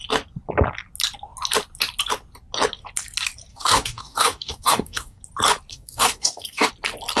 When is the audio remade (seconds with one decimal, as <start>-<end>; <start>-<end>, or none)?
3.5-5.2; 5.7-6.7